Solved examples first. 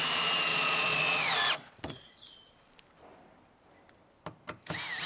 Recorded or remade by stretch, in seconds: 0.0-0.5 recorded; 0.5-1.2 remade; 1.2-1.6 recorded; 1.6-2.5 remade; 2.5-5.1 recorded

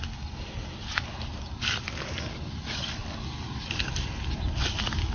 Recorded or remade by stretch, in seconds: 0.0-5.1 recorded

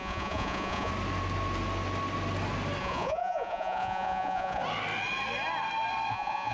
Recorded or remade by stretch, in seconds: 0.0-0.9 remade; 0.9-2.8 recorded; 2.8-4.6 remade; 4.6-6.1 recorded; 6.1-6.5 remade